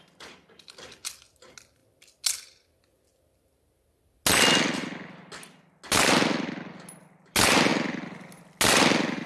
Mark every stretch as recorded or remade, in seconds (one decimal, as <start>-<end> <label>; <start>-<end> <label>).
0.0-9.3 recorded